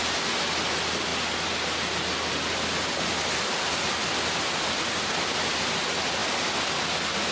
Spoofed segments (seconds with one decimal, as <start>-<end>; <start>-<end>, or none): none